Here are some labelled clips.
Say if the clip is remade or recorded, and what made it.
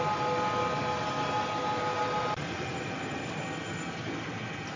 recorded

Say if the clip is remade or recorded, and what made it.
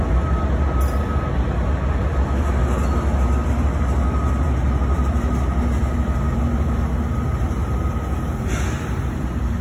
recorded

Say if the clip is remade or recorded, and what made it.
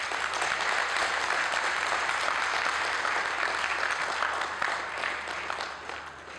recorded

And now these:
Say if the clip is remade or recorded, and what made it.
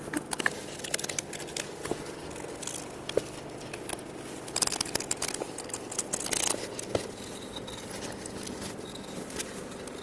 recorded